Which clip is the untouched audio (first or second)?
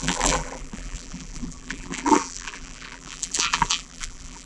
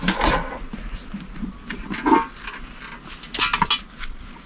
second